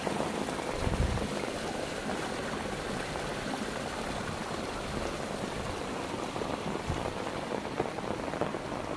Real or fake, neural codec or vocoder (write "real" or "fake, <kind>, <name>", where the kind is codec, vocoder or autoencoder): fake, vocoder, BigVGAN v2